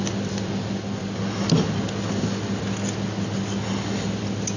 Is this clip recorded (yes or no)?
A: yes